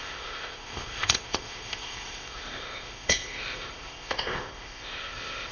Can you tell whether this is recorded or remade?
remade